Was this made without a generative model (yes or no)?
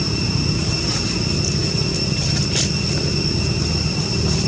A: yes